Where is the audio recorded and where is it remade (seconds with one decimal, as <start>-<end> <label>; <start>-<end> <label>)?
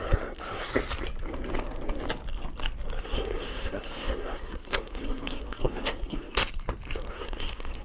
0.0-0.7 remade; 0.7-3.0 recorded; 3.0-6.4 remade; 6.4-7.1 recorded; 7.1-7.8 remade